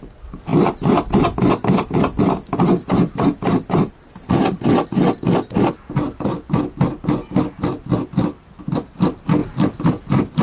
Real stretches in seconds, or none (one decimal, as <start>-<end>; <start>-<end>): 0.0-10.4